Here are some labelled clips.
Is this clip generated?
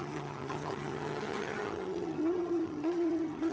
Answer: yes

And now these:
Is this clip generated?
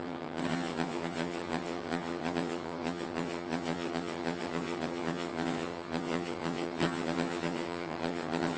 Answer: yes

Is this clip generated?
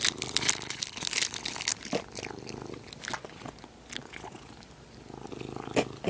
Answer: no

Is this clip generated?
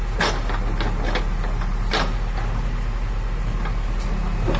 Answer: no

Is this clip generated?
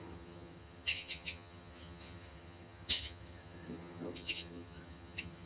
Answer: yes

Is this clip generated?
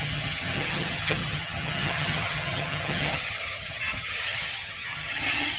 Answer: yes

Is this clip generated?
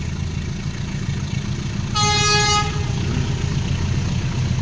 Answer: no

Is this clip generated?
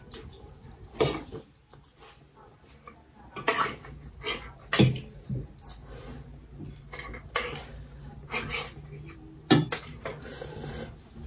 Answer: no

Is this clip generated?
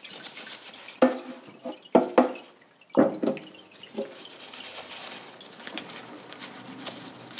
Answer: no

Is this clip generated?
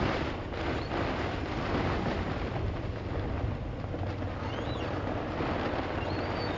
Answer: no